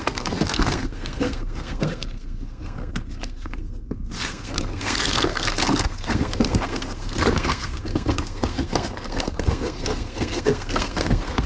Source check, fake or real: fake